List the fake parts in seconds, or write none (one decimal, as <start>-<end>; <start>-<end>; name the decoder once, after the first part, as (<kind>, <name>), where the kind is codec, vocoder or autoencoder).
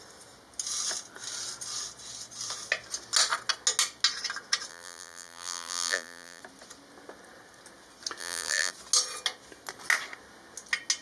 4.7-6.4 (vocoder, BigVGAN v2); 8.2-8.7